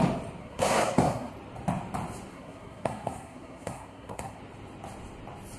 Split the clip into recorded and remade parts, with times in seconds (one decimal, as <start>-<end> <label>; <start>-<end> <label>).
0.0-0.4 recorded; 0.4-1.3 remade; 1.3-2.3 recorded; 2.3-4.4 remade; 4.4-5.6 recorded